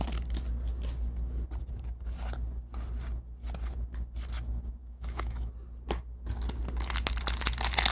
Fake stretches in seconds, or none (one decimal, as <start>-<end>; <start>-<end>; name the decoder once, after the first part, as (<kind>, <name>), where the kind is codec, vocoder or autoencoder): 4.8-5.5 (autoencoder, DAC-VAE)